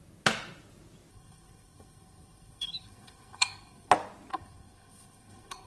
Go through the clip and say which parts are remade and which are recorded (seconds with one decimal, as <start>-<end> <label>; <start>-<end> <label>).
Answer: 0.0-1.1 recorded; 1.1-3.9 remade; 3.9-4.3 recorded; 4.3-5.7 remade